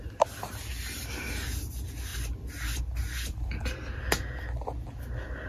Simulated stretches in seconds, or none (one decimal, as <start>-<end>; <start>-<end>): none